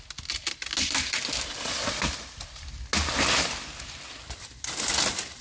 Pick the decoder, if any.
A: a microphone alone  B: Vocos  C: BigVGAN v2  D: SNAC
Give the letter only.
A